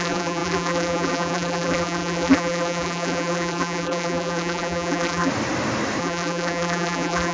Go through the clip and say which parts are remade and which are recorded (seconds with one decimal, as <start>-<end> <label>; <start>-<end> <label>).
0.0-5.3 remade; 5.3-6.0 recorded; 6.0-7.3 remade